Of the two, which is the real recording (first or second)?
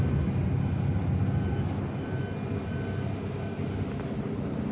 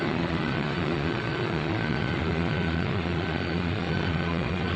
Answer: first